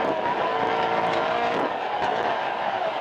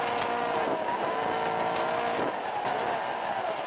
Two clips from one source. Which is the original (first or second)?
second